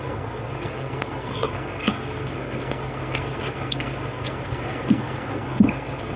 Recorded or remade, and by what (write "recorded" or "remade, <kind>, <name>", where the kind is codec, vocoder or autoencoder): remade, codec, SNAC